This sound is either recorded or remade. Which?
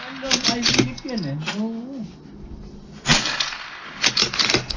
recorded